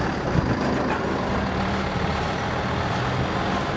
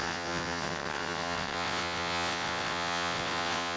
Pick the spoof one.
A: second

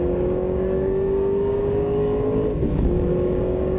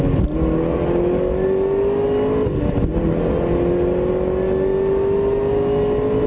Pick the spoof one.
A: first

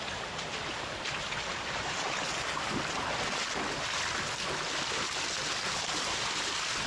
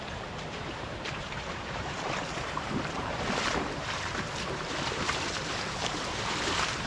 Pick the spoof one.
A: second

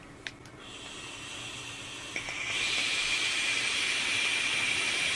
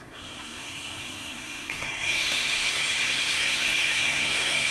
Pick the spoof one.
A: second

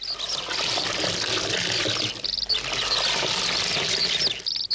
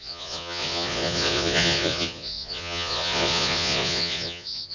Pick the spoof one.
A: second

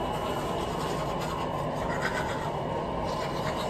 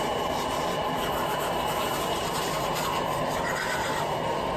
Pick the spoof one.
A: second